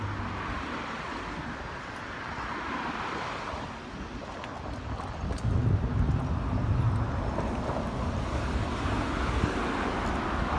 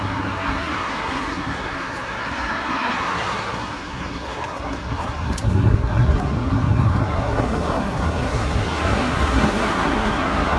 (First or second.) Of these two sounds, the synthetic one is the second